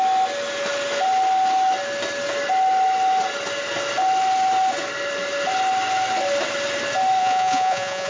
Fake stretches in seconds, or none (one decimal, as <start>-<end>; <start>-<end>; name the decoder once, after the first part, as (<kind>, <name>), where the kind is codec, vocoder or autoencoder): 7.2-8.1 (vocoder, Vocos)